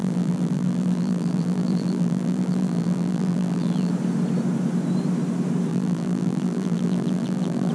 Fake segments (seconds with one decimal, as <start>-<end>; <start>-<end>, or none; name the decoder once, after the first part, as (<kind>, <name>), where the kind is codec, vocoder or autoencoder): 0.0-3.9 (vocoder, BigVGAN v2); 5.7-7.7